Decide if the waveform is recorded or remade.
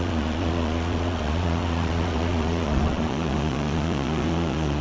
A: remade